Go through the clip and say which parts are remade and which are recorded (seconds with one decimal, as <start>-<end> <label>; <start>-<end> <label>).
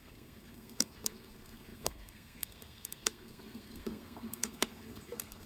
0.0-5.5 remade